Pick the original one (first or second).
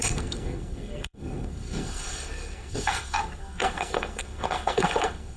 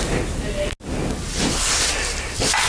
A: second